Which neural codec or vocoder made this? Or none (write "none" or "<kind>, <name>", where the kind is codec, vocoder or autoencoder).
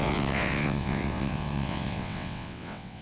vocoder, WaveNeXt